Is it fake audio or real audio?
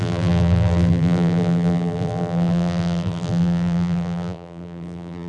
fake